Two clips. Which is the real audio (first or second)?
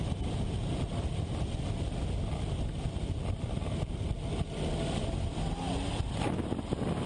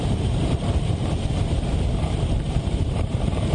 first